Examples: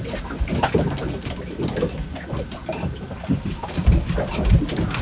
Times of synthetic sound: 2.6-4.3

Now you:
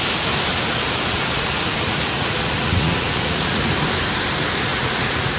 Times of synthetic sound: 0.5-3.7; 4.7-5.4

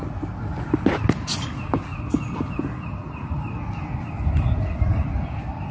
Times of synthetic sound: none

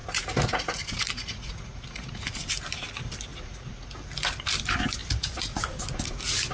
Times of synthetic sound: 0.0-2.3; 3.3-3.9; 5.0-5.6